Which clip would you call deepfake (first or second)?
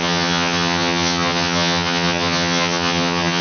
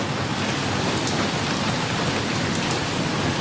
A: first